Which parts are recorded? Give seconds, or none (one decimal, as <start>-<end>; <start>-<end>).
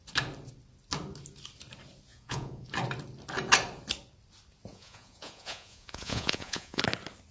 0.0-2.1; 2.7-4.7; 6.8-7.3